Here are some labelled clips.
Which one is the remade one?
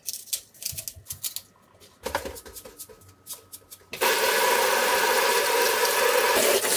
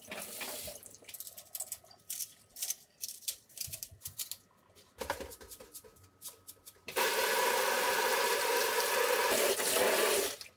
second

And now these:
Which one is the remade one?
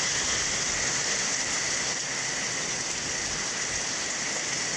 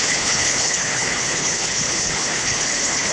second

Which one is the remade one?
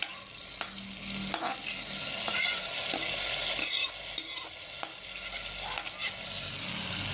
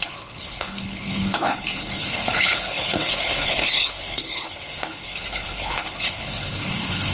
second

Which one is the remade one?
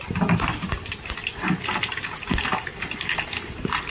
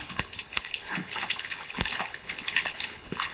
second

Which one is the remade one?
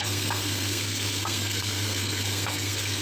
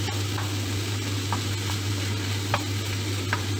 first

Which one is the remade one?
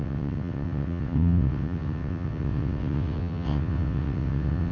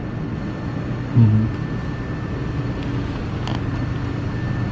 first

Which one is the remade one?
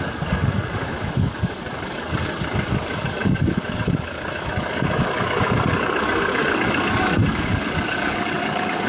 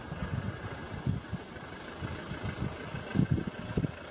first